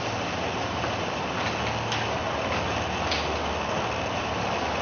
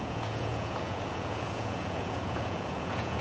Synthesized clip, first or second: second